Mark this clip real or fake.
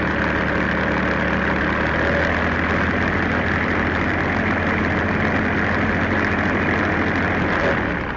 real